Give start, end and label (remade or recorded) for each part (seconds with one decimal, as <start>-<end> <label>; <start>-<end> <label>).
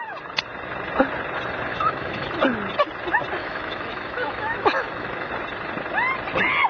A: 0.0-1.7 recorded; 1.7-2.4 remade; 2.4-3.4 recorded; 3.4-5.3 remade; 5.3-6.7 recorded